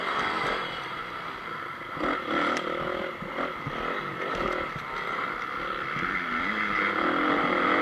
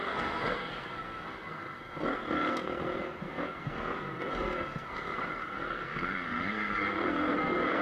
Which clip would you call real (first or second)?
first